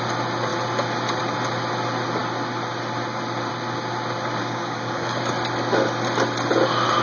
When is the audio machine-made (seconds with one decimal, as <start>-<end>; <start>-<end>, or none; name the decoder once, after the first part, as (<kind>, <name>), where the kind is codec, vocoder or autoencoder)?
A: 4.4-5.2 (codec, DAC)